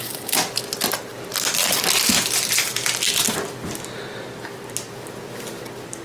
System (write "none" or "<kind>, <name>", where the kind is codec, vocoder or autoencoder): none